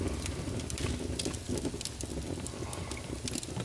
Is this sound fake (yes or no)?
no